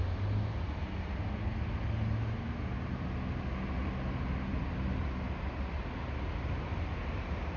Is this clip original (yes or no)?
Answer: yes